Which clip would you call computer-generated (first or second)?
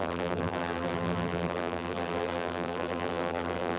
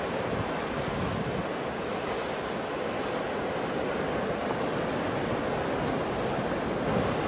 first